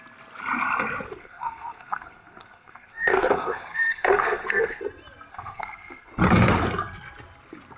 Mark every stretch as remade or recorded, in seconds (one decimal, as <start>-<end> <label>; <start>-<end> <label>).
0.0-1.2 recorded; 1.2-4.8 remade; 4.8-5.3 recorded; 5.3-6.1 remade; 6.1-7.8 recorded